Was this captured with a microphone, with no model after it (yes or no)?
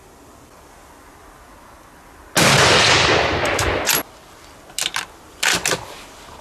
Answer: yes